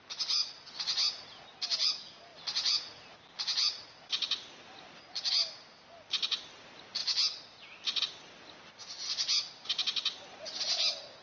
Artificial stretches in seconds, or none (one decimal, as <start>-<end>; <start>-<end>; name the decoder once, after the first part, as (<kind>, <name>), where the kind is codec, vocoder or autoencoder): none